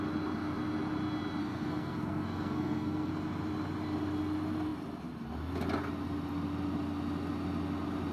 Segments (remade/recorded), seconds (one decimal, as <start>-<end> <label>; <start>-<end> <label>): 0.0-1.4 recorded; 1.4-3.1 remade; 3.1-8.1 recorded

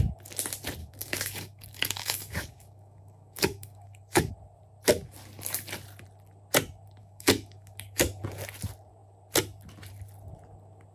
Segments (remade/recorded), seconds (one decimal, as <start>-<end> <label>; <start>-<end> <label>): 0.0-0.8 recorded; 0.8-4.3 remade; 4.3-7.0 recorded; 7.0-8.2 remade; 8.2-10.9 recorded

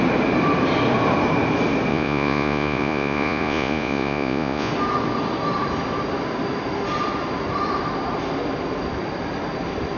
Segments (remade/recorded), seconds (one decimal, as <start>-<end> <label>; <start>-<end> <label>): 0.0-1.9 recorded; 1.9-4.7 remade; 4.7-10.0 recorded

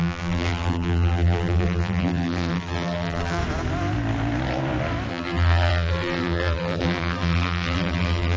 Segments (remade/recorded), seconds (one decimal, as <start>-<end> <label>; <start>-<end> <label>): 0.0-3.4 remade; 3.4-5.1 recorded; 5.1-8.4 remade

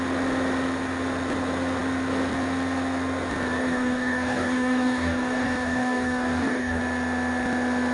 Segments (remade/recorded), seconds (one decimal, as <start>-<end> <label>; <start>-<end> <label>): 0.0-3.6 recorded; 3.6-6.8 remade; 6.8-7.9 recorded